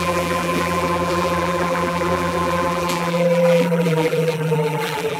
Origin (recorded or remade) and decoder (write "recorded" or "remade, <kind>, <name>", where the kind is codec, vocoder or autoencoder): remade, vocoder, BigVGAN v2